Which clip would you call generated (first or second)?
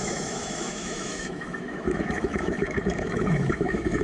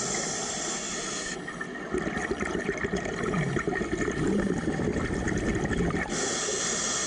first